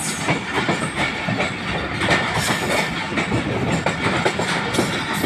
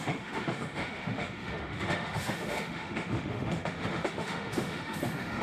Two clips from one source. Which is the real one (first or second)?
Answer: first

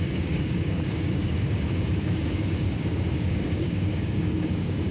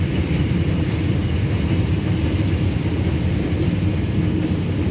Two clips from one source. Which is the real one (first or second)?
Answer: second